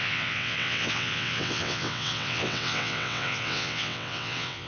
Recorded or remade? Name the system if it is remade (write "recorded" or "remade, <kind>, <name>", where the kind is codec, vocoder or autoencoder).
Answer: remade, vocoder, WaveNeXt